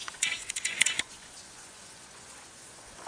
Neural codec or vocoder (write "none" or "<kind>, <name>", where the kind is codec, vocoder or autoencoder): vocoder, Vocos